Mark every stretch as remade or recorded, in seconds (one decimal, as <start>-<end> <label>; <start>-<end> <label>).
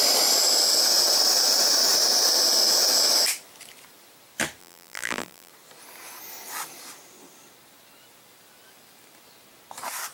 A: 0.0-4.6 recorded; 4.6-5.5 remade; 5.5-10.1 recorded